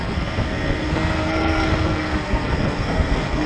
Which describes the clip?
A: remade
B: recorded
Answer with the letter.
A